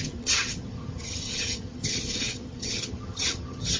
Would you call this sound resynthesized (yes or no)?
yes